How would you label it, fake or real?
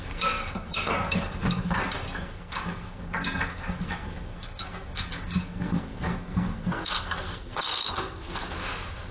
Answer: fake